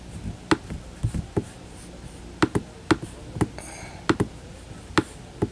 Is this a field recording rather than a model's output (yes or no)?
yes